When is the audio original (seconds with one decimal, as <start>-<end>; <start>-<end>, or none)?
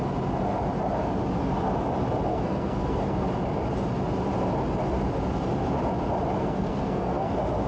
0.0-2.3; 3.3-6.4; 7.3-7.7